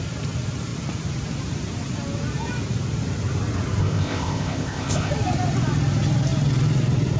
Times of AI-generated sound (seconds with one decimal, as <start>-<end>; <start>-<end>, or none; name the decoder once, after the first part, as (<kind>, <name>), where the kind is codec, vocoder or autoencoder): 3.8-5.1 (codec, ZipCodec)